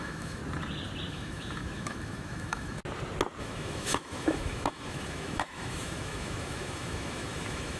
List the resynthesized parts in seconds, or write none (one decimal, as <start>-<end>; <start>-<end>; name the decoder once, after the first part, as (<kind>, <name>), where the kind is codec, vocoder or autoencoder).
0.0-0.4 (autoencoder, DAC-VAE); 1.1-2.8; 3.4-7.8